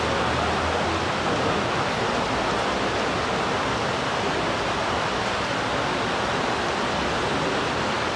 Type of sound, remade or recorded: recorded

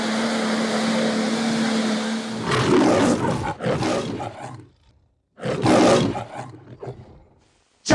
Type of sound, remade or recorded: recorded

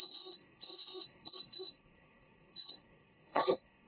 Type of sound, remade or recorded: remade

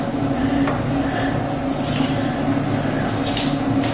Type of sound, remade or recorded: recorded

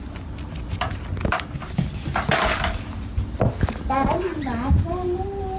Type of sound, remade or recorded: recorded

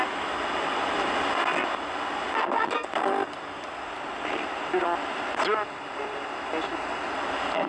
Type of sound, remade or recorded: recorded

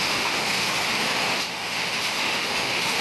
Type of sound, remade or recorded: remade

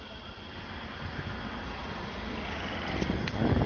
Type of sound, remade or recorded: remade